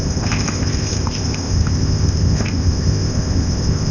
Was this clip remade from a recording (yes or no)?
yes